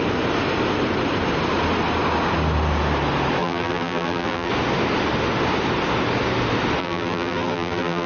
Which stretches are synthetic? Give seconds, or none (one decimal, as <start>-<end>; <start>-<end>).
3.4-4.5; 6.8-8.1